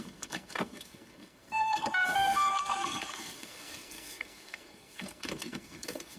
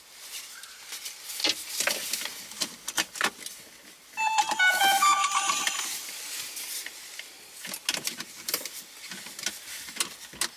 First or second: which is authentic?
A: second